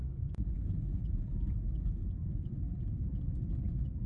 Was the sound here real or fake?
fake